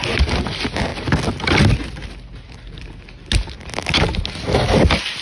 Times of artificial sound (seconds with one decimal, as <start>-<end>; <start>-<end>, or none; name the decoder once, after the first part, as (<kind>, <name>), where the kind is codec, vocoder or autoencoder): none